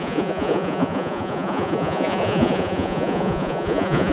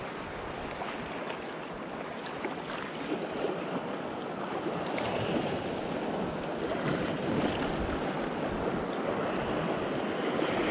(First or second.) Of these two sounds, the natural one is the second